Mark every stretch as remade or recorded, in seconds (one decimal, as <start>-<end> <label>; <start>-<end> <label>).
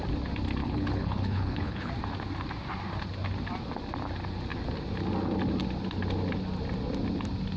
0.0-0.6 recorded; 0.6-1.9 remade; 1.9-7.6 recorded